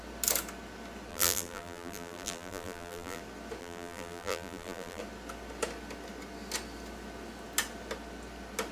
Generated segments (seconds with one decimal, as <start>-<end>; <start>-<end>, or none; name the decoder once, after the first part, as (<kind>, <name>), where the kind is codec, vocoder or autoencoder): 1.1-3.2 (vocoder, BigVGAN v2); 3.6-5.0